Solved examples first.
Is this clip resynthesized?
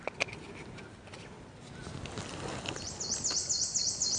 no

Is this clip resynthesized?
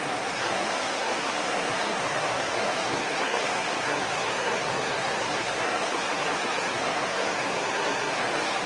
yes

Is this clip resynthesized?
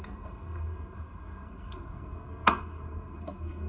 yes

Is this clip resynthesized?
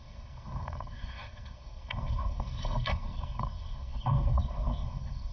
yes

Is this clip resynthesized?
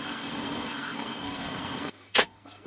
yes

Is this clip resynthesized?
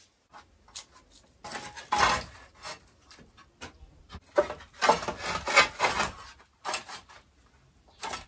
no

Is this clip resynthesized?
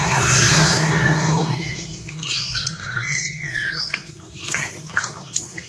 yes